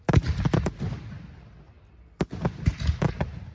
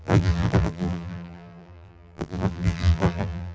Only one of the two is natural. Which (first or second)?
first